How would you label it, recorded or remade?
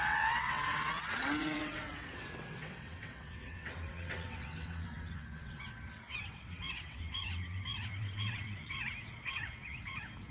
remade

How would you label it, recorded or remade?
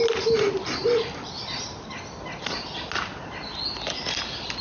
recorded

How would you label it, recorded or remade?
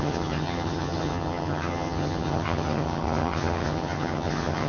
remade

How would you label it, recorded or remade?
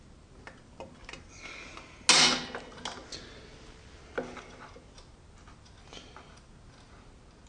recorded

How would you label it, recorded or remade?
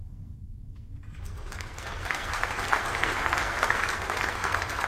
remade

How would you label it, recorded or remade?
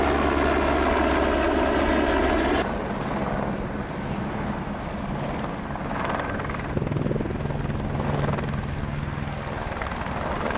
recorded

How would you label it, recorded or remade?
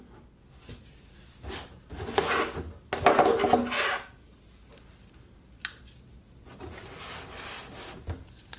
recorded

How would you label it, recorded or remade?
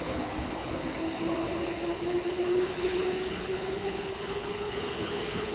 remade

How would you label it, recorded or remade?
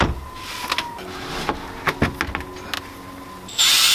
recorded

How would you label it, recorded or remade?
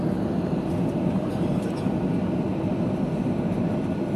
recorded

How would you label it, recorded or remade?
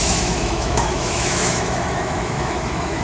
remade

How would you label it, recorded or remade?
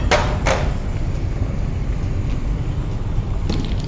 recorded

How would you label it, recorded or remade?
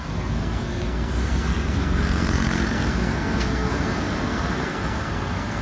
remade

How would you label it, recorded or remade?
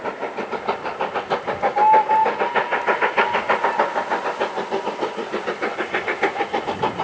recorded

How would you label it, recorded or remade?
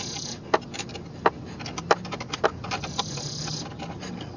recorded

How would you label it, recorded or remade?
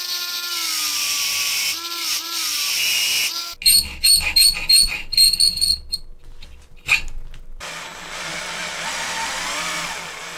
recorded